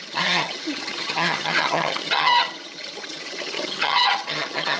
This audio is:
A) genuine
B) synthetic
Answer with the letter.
B